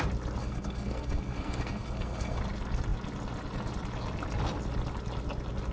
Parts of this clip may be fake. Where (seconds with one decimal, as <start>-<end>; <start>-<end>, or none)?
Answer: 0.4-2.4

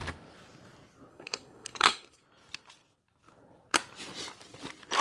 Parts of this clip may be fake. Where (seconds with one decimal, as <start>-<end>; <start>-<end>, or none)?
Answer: 1.1-2.2

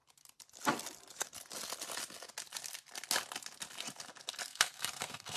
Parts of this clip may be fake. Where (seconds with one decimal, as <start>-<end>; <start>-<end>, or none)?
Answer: 4.5-5.4